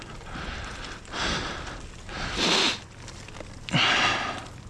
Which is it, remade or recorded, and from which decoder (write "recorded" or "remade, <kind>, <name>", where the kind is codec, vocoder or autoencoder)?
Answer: remade, vocoder, BigVGAN v2